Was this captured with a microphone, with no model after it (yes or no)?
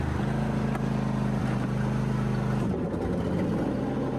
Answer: yes